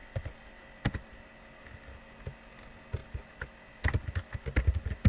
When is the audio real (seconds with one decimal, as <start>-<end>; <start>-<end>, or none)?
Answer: 0.0-5.1